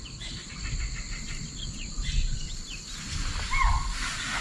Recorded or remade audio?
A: recorded